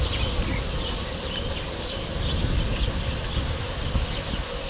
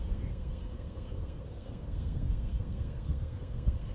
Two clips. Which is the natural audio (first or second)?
first